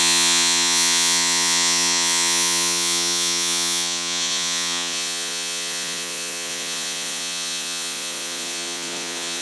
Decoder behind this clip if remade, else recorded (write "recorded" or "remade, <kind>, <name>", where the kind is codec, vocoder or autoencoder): remade, vocoder, Vocos